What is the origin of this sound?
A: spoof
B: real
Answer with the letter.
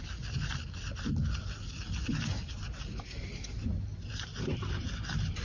B